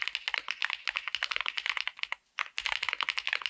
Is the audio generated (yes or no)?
no